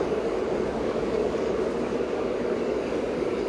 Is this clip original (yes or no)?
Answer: no